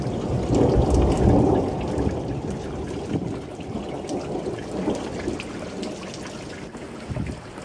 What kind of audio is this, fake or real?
real